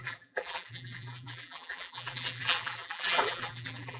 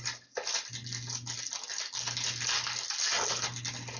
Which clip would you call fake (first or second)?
first